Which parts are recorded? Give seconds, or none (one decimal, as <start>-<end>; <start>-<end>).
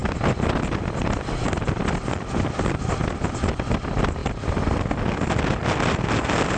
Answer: 2.7-6.6